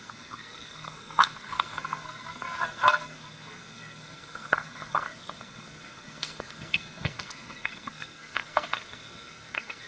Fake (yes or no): yes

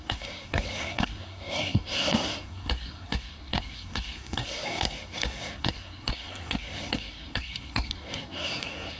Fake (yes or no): yes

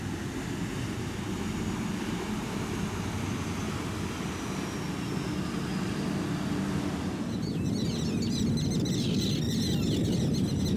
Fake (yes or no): no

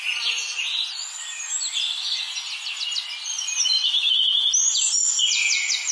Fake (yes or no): no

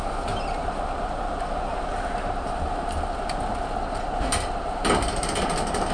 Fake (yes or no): no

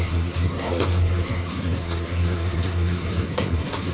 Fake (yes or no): yes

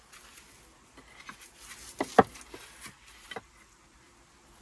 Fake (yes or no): no